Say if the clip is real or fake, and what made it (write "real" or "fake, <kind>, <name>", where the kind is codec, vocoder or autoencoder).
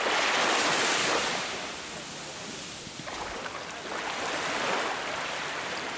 real